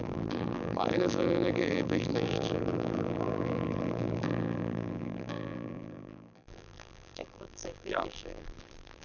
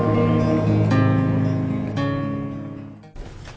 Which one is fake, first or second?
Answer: first